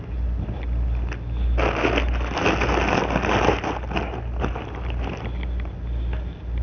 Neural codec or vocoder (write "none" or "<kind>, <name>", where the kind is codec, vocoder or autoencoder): none